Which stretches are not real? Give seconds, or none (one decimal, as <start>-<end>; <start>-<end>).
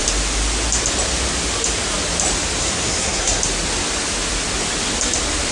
2.6-3.4